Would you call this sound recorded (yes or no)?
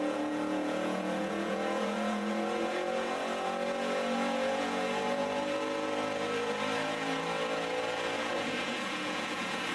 no